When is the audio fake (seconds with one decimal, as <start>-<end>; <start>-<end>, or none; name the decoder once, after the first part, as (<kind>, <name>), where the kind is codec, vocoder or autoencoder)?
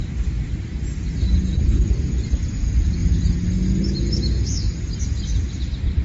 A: 0.0-3.0 (vocoder, BigVGAN v2)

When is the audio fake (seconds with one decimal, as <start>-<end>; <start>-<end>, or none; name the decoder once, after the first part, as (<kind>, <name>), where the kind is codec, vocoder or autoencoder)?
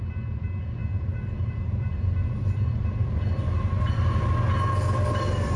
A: 0.8-4.2 (vocoder, BigVGAN v2)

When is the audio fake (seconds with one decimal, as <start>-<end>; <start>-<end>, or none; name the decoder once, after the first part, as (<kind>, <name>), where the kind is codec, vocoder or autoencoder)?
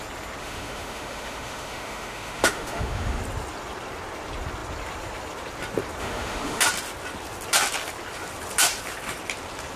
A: 0.4-3.2 (autoencoder, DAC-VAE); 6.0-6.6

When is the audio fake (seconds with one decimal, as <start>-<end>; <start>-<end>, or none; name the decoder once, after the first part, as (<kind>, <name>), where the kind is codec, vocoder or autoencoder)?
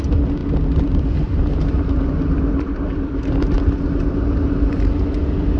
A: none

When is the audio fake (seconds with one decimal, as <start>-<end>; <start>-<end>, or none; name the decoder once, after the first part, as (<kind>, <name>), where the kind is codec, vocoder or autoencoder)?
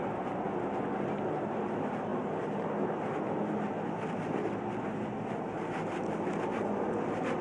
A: none